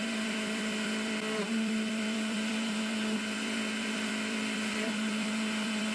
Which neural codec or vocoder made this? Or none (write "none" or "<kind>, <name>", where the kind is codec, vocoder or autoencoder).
vocoder, BigVGAN v2